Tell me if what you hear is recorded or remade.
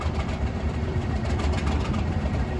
remade